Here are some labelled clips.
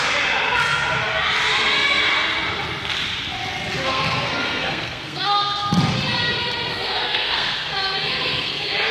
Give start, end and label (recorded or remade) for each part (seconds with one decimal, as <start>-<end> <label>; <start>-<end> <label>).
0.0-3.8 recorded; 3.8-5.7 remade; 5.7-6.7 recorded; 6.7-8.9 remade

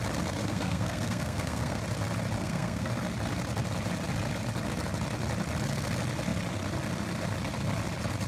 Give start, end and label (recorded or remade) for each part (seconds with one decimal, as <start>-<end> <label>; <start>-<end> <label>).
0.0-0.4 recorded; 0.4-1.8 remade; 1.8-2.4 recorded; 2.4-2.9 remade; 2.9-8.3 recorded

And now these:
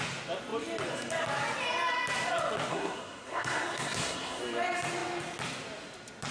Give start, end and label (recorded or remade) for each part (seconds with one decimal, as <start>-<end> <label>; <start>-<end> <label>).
0.0-2.7 recorded; 2.7-4.4 remade; 4.4-6.3 recorded

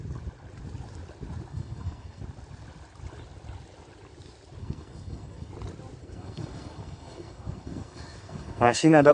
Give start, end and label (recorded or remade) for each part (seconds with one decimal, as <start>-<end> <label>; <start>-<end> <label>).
0.0-1.5 recorded; 1.5-2.2 remade; 2.2-4.6 recorded; 4.6-5.5 remade; 5.5-6.0 recorded; 6.0-9.1 remade

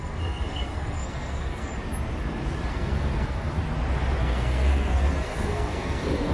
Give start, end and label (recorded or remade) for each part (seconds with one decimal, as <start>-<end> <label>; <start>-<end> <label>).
0.0-1.7 remade; 1.7-2.7 recorded; 2.7-3.6 remade; 3.6-4.2 recorded; 4.2-6.3 remade

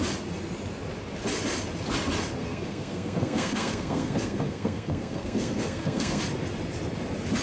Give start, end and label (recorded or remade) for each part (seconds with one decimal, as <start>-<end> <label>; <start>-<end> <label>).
0.0-2.4 recorded; 2.4-6.2 remade; 6.2-7.4 recorded

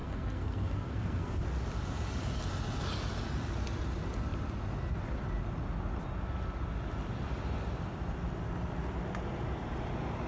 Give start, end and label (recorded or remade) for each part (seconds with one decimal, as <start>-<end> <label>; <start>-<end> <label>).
0.0-1.4 remade; 1.4-10.3 recorded